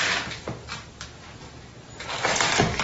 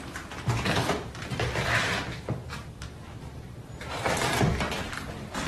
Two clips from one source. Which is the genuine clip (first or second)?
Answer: first